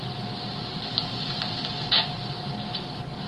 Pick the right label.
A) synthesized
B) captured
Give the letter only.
B